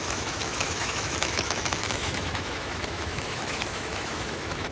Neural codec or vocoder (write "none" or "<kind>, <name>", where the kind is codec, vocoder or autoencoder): autoencoder, DAC-VAE